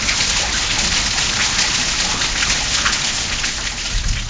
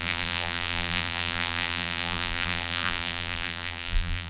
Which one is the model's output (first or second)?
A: second